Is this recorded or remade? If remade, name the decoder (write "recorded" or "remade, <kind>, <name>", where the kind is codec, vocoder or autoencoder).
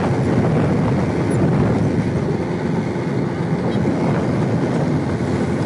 recorded